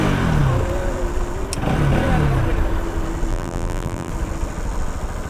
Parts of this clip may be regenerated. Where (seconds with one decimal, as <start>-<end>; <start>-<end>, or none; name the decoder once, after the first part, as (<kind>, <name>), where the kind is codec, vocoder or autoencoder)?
3.3-4.1 (vocoder, BigVGAN v2)